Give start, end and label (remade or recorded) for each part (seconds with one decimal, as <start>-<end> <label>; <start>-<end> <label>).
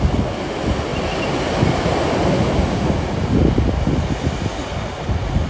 0.0-5.5 recorded